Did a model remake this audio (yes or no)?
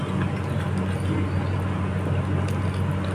no